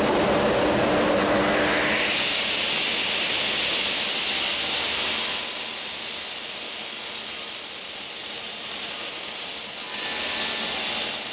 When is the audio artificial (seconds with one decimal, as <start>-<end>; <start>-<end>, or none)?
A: 8.2-9.6